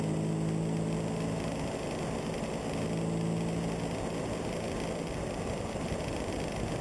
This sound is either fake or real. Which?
real